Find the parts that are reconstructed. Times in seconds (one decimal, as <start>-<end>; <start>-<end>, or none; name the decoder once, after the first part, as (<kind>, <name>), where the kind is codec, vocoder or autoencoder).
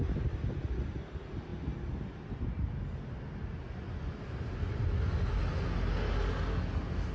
none